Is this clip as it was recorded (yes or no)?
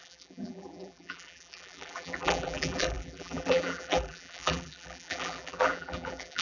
no